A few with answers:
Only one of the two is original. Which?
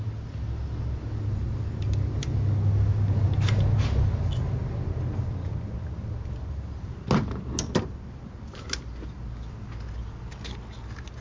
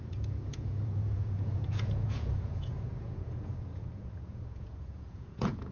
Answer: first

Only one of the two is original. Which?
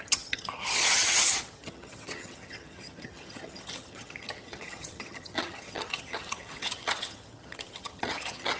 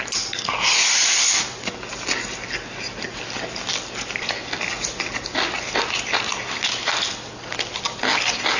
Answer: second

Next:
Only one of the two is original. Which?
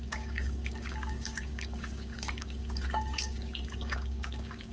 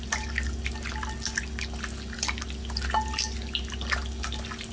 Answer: second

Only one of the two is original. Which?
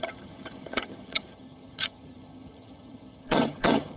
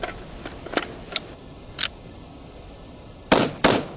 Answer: second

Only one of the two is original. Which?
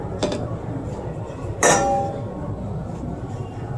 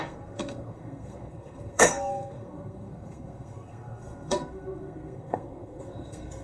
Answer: first